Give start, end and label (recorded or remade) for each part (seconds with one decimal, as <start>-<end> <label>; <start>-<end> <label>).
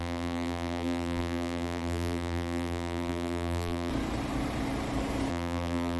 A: 0.0-3.9 remade; 3.9-5.3 recorded; 5.3-6.0 remade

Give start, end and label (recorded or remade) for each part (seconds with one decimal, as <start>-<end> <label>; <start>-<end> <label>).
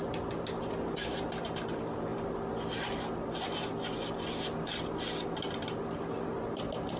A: 0.0-7.0 recorded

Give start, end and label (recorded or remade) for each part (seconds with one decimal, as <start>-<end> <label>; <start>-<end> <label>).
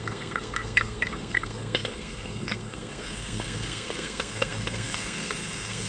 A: 0.0-5.9 remade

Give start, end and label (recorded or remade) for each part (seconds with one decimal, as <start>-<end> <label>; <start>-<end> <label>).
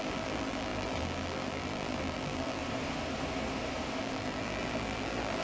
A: 0.0-2.6 remade; 2.6-4.0 recorded; 4.0-5.4 remade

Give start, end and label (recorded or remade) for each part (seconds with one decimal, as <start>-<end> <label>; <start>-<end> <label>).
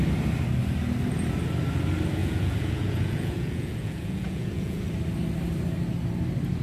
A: 0.0-2.2 recorded; 2.2-4.8 remade; 4.8-6.6 recorded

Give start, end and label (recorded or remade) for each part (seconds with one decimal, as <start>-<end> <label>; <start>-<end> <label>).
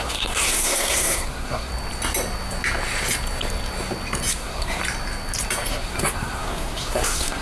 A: 0.0-1.7 remade; 1.7-4.3 recorded; 4.3-4.8 remade; 4.8-5.7 recorded; 5.7-7.4 remade